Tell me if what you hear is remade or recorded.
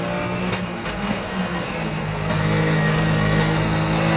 remade